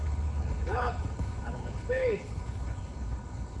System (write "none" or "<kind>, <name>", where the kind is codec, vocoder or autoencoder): codec, HILCodec